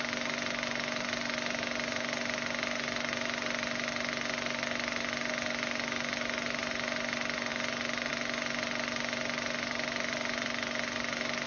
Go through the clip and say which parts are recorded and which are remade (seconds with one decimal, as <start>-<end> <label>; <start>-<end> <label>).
0.0-11.5 recorded